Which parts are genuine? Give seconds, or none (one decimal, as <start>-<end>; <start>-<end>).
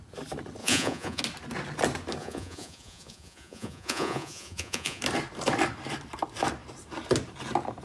0.0-0.6; 1.2-2.2; 5.0-7.8